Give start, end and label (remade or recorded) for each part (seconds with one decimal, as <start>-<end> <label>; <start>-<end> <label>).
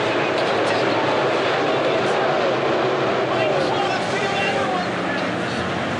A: 0.0-6.0 recorded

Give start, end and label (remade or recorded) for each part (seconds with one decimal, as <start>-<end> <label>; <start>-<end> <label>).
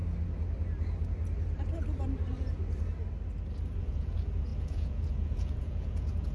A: 0.0-3.8 recorded; 3.8-6.3 remade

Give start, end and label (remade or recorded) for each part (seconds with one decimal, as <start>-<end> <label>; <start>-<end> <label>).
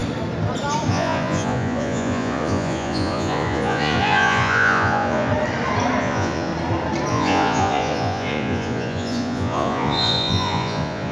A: 0.0-0.9 recorded; 0.9-5.3 remade; 5.3-6.0 recorded; 6.0-6.5 remade; 6.5-7.1 recorded; 7.1-11.1 remade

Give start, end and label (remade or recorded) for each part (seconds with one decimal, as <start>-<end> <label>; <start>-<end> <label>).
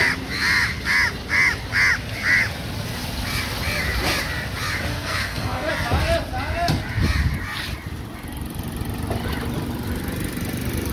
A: 0.0-4.9 recorded; 4.9-5.7 remade; 5.7-10.9 recorded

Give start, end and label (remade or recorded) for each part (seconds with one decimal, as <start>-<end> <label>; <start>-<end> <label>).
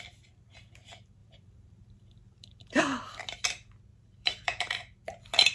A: 0.0-1.2 recorded; 1.2-2.8 remade; 2.8-3.9 recorded; 3.9-4.6 remade; 4.6-5.5 recorded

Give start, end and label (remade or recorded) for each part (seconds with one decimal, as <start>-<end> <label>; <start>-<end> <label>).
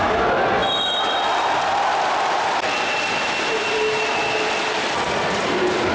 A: 0.0-5.9 recorded